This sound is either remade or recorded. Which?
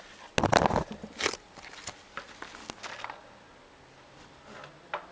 recorded